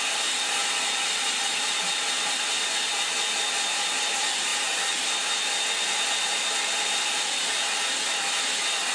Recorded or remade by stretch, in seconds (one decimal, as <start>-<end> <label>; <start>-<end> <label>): 0.0-8.9 recorded